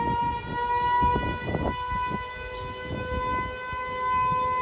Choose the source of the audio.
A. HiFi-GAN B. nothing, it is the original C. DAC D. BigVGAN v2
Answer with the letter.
B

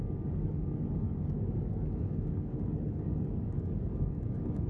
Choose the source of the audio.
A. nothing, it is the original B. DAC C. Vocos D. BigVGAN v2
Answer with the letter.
B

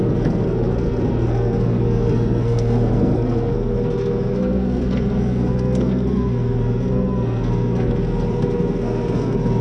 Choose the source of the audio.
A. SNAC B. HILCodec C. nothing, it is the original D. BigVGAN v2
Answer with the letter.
A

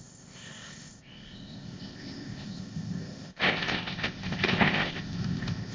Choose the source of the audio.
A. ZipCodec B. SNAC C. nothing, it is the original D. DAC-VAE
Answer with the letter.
A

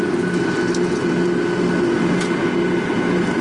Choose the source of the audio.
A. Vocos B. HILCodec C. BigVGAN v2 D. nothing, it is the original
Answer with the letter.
D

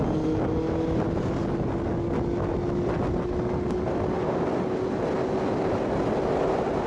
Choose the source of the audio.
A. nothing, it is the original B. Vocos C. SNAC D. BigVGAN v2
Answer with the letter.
A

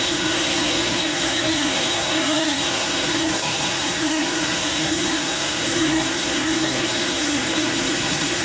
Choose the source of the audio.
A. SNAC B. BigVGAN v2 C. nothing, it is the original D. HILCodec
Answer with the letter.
A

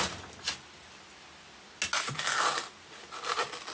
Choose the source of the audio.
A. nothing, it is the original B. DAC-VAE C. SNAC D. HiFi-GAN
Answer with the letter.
A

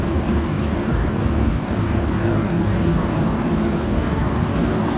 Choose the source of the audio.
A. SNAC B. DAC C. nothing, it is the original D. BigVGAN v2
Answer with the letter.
B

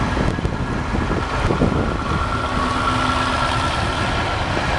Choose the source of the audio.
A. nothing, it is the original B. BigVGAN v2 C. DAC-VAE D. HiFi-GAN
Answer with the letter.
A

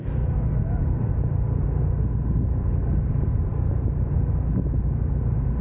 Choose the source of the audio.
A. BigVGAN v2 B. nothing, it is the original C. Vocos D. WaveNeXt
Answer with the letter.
B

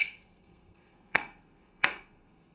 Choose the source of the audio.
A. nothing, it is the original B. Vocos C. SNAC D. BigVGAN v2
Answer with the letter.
C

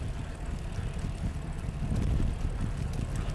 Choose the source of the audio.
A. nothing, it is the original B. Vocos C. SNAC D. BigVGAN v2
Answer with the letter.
A